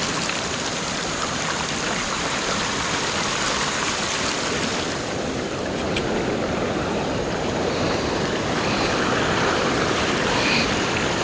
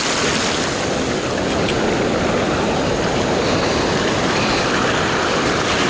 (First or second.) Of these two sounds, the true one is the second